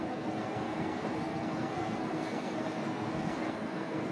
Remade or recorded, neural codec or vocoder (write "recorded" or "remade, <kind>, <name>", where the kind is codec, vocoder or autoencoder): remade, codec, SNAC